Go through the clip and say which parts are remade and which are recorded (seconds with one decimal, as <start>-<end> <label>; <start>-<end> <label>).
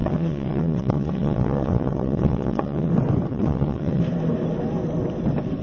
0.0-2.9 remade; 2.9-3.3 recorded; 3.3-4.0 remade; 4.0-5.6 recorded